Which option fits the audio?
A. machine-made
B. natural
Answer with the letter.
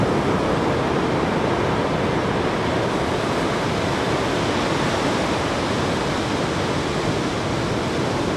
B